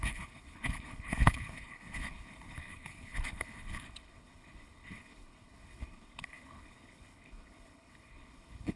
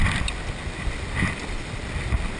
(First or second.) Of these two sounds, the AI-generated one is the first